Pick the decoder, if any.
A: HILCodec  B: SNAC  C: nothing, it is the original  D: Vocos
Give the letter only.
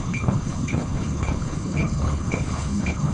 A